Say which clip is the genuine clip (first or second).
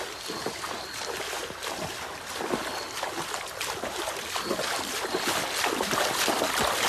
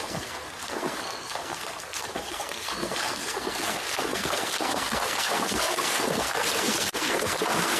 first